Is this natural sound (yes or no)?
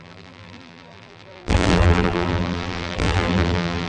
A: no